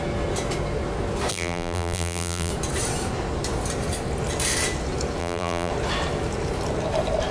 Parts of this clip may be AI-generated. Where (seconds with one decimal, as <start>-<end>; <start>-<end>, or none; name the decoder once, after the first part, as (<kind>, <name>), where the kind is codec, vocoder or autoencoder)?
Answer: 1.3-2.5 (vocoder, BigVGAN v2); 5.2-5.7